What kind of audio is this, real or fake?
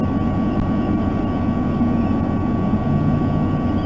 real